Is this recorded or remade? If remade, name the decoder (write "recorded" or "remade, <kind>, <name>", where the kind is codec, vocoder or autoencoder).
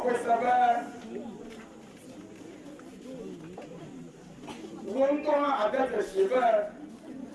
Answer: recorded